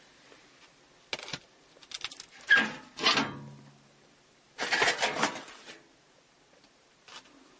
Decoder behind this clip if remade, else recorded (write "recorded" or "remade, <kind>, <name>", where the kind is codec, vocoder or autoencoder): recorded